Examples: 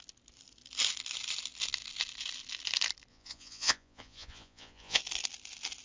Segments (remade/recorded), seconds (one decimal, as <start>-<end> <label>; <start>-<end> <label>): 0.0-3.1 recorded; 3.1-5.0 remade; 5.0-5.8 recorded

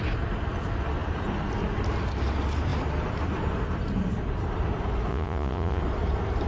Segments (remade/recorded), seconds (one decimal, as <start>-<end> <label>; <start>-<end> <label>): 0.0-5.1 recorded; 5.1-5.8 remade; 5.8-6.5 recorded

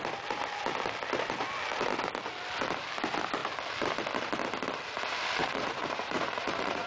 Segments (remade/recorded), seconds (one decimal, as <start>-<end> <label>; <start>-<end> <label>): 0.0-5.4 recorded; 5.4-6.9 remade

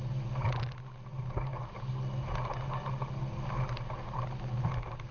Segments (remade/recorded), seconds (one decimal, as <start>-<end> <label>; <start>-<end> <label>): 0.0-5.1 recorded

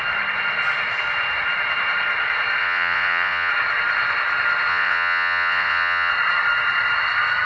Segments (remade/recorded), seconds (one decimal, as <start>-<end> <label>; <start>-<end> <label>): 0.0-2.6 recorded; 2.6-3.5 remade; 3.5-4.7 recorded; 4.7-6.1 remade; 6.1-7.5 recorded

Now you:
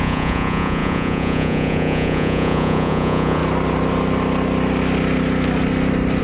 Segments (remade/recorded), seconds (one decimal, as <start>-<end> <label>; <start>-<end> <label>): 0.0-3.4 remade; 3.4-6.2 recorded

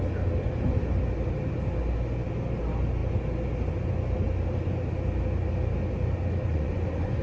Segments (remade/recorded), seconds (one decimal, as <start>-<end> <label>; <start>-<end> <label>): 0.0-6.5 recorded; 6.5-7.2 remade

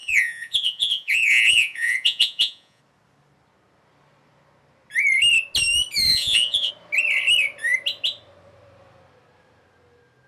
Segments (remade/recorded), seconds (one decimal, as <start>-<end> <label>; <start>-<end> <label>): 0.0-2.8 remade; 2.8-6.1 recorded; 6.1-6.7 remade; 6.7-10.3 recorded